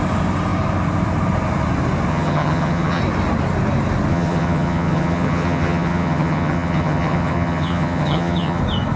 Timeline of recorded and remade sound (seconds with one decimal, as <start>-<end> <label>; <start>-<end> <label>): 0.0-2.1 recorded; 2.1-3.0 remade; 3.0-4.1 recorded; 4.1-8.6 remade; 8.6-9.0 recorded